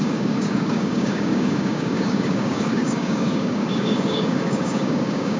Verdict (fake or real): fake